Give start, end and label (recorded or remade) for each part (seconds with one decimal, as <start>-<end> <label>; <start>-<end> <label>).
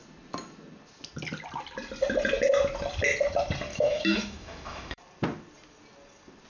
0.0-3.7 recorded; 3.7-5.0 remade; 5.0-6.5 recorded